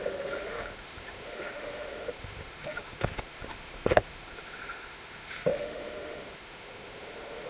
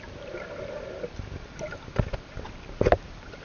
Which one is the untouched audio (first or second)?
second